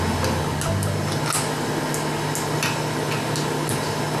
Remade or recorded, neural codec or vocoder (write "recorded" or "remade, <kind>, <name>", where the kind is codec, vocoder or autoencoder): recorded